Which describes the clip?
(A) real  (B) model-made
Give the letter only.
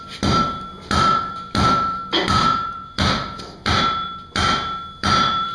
B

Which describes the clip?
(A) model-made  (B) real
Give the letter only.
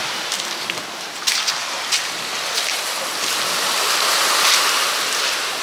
B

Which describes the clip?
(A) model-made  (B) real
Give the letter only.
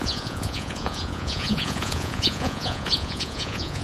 A